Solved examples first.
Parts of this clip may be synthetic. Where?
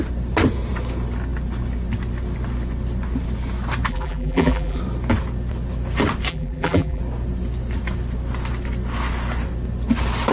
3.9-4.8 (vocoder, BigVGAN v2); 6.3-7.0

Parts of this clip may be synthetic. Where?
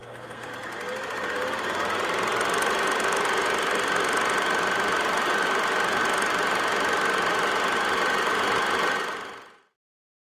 0.0-0.5 (codec, SNAC)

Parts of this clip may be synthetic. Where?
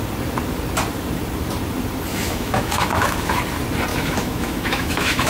2.1-3.4 (autoencoder, DAC-VAE); 3.9-5.3